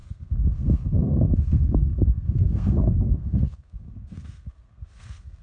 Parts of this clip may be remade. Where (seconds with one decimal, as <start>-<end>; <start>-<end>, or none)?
0.0-5.4